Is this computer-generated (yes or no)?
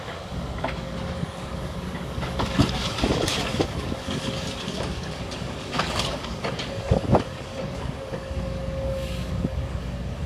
yes